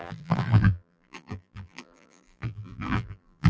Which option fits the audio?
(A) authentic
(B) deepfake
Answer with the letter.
B